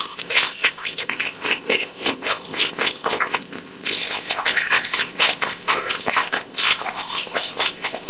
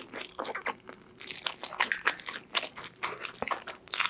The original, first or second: second